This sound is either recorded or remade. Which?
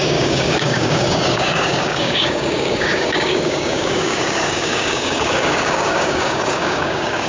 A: remade